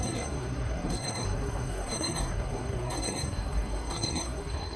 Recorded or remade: remade